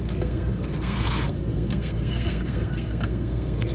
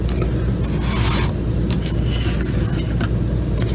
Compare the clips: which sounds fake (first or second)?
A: first